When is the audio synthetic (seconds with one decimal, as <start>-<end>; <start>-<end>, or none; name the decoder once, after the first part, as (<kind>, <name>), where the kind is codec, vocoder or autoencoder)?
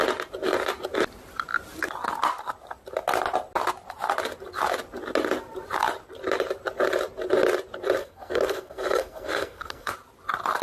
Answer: 8.0-9.9 (codec, SNAC)